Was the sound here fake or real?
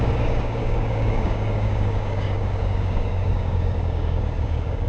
fake